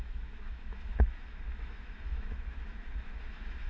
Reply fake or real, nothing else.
fake